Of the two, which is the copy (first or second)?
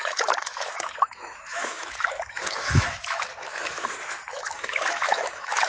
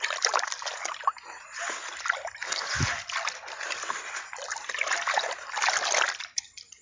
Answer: first